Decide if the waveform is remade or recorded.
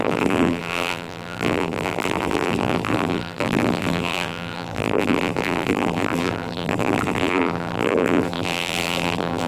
remade